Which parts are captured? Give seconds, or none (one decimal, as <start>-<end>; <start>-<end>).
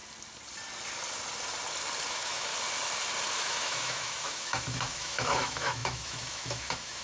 0.0-2.1; 2.5-3.3